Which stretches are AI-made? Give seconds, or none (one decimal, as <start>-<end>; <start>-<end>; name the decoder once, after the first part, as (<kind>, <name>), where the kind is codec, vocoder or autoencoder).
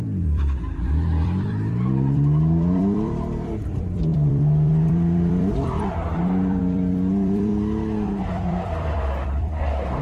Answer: 0.0-7.5 (vocoder, BigVGAN v2); 8.2-10.0